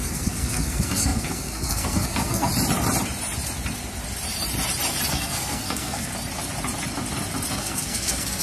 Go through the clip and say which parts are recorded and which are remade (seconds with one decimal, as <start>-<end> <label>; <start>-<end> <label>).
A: 0.0-2.5 remade; 2.5-5.1 recorded; 5.1-6.1 remade; 6.1-7.5 recorded; 7.5-8.4 remade